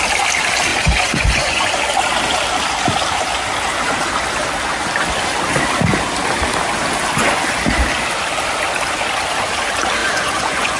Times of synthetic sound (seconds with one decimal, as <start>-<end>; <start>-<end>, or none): 0.7-1.7; 10.0-10.8